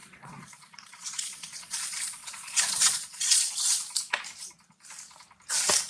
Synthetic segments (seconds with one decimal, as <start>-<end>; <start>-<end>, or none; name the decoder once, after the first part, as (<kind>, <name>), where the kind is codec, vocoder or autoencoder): 0.0-3.5 (vocoder, Vocos)

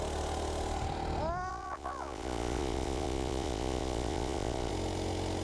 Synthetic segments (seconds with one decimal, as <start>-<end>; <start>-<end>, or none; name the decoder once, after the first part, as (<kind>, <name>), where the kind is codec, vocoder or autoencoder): 1.5-4.7 (vocoder, Vocos)

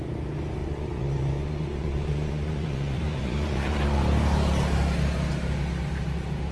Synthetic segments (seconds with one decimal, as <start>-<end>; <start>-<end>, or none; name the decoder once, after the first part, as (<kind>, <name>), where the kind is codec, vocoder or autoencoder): 0.6-4.0 (vocoder, Vocos)

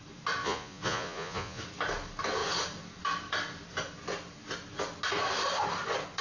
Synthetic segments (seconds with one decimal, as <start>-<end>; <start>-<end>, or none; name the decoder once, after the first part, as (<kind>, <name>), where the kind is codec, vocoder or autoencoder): 0.4-1.6 (vocoder, Vocos)